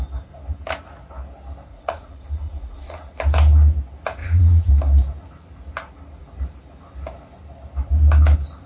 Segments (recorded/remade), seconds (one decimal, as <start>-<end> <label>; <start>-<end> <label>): 0.0-1.7 recorded; 1.7-3.2 remade; 3.2-4.2 recorded; 4.2-4.7 remade; 4.7-8.7 recorded